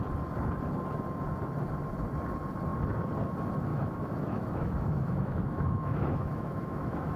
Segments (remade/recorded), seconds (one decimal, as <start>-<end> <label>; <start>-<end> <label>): 0.0-3.7 recorded; 3.7-7.2 remade